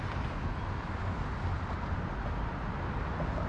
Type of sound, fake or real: real